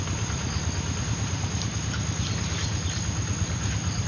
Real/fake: real